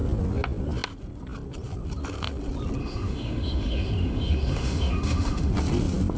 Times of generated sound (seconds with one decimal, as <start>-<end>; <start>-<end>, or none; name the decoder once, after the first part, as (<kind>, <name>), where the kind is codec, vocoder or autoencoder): 2.8-5.5 (autoencoder, DAC-VAE)